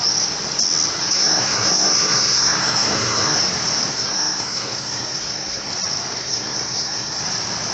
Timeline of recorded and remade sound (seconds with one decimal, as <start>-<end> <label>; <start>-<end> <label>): 0.0-1.0 recorded; 1.0-3.4 remade; 3.4-3.9 recorded; 3.9-5.7 remade; 5.7-6.2 recorded; 6.2-7.2 remade; 7.2-7.7 recorded